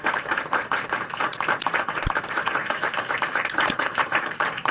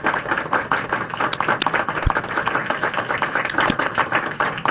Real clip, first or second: second